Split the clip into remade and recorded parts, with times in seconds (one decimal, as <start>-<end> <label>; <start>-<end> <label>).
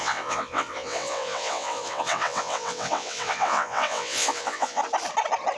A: 0.0-4.8 remade; 4.8-5.6 recorded